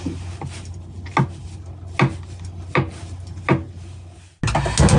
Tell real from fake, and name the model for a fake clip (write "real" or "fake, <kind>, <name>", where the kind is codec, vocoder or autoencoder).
real